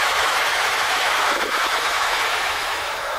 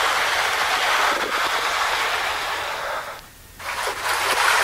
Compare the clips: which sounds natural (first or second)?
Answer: second